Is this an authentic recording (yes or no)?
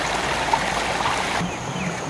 yes